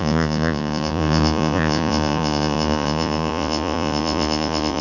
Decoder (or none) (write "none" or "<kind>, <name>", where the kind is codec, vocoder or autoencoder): vocoder, Vocos